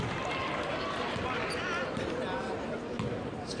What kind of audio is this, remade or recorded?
recorded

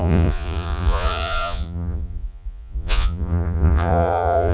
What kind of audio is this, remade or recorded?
remade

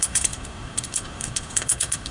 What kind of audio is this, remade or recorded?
remade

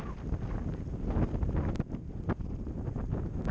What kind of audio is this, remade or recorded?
recorded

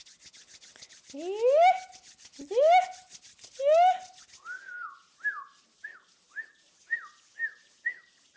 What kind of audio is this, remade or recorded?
recorded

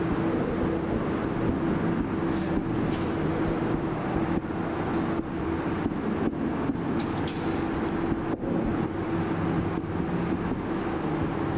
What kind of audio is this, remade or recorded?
recorded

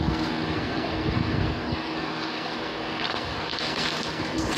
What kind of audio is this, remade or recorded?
remade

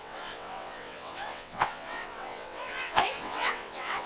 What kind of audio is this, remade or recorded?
remade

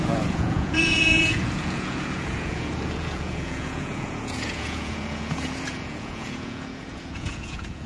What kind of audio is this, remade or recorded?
remade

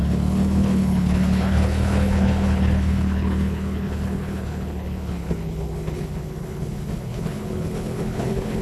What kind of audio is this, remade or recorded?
remade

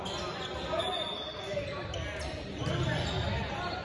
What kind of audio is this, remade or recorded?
recorded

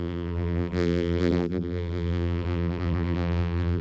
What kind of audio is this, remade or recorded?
remade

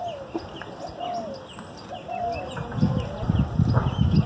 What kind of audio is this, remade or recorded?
recorded